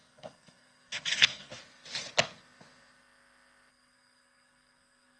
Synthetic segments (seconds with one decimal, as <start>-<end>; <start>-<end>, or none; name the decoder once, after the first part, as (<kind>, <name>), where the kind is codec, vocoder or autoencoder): 0.0-1.5 (codec, SNAC); 3.7-5.2